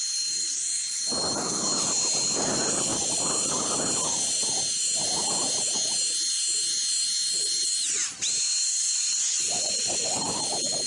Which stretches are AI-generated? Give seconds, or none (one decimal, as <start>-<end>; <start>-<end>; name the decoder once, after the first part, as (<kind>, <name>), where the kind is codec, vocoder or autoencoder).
8.6-10.4 (vocoder, Vocos)